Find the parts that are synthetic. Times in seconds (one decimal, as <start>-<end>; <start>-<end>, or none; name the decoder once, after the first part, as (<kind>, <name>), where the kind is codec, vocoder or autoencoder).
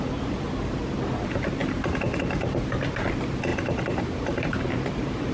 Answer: 3.5-5.3 (vocoder, BigVGAN v2)